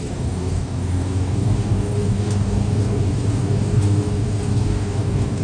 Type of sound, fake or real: fake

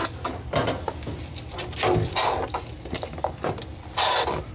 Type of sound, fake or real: real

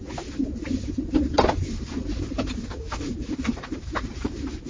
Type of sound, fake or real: real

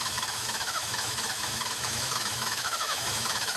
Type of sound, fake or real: fake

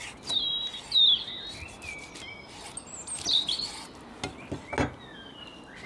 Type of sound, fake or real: real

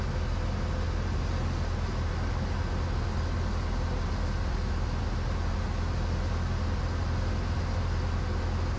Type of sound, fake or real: real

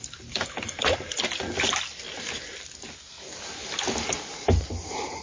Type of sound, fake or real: real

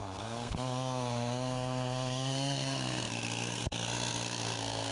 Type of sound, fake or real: fake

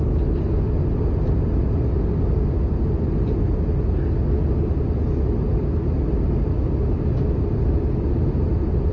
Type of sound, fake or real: real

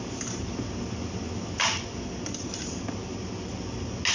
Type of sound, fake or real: real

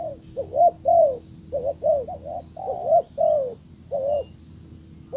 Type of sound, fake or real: real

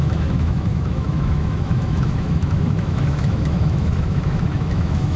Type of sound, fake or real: fake